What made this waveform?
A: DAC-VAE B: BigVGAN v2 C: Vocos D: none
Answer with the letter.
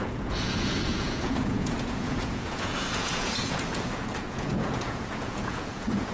C